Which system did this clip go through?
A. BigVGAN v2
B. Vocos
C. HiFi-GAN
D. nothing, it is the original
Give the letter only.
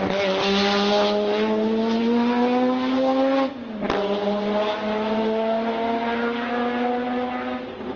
D